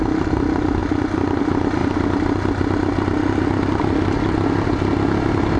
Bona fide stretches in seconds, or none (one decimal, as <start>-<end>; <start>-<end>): 0.0-5.6